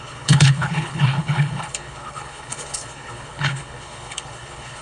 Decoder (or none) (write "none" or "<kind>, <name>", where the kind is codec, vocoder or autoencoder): codec, HILCodec